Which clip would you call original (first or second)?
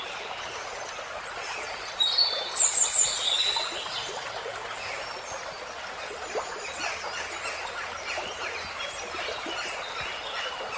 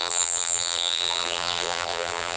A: first